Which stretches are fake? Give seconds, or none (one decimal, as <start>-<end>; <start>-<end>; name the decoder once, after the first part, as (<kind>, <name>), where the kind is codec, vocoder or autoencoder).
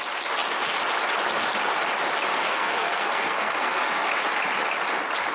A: 2.3-4.0 (codec, SNAC)